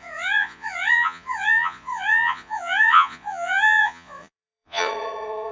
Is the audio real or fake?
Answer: fake